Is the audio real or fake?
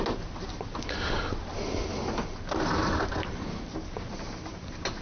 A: real